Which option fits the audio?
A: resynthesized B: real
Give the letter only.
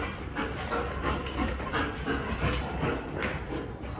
B